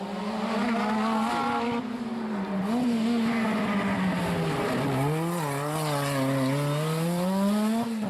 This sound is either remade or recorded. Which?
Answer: recorded